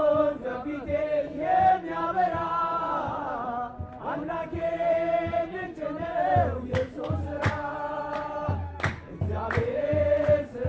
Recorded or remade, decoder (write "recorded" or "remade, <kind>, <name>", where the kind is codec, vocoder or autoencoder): recorded